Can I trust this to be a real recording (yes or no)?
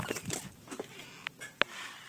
yes